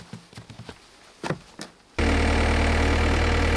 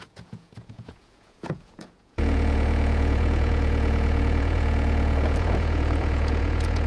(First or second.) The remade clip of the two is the second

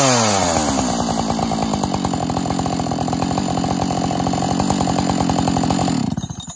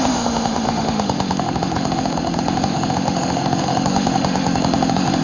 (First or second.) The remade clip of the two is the second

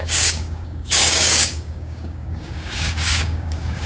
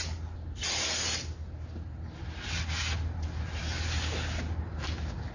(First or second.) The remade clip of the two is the first